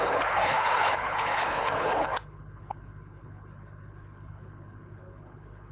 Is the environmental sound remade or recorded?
remade